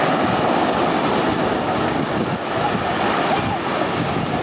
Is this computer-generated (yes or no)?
no